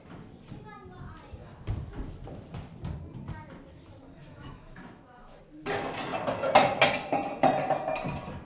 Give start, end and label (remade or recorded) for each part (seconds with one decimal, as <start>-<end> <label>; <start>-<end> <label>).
0.0-4.2 recorded; 4.2-5.4 remade; 5.4-8.5 recorded